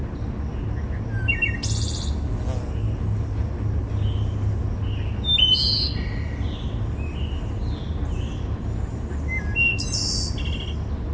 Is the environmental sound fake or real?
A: real